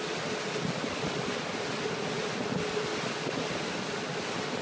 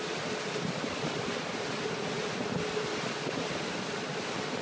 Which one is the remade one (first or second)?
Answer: second